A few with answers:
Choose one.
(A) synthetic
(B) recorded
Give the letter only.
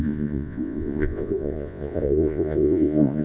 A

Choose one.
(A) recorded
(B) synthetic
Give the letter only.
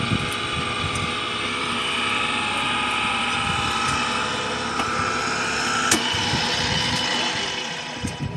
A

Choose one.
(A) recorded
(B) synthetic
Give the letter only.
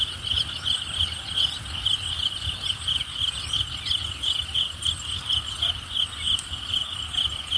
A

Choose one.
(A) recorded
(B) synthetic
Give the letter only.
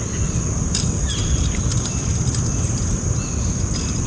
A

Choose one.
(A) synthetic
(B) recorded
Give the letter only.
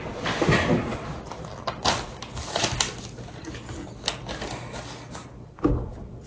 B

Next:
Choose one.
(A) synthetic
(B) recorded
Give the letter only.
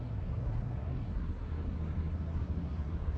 A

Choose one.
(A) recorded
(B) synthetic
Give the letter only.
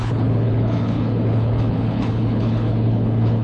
B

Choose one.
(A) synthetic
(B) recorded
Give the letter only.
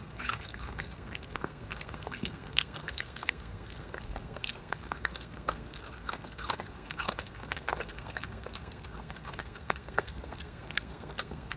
A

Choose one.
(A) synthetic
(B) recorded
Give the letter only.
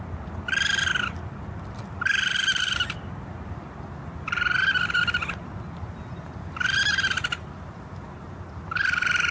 B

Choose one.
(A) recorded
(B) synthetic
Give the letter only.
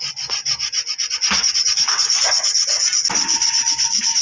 A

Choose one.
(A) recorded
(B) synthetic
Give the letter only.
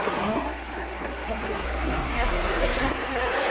B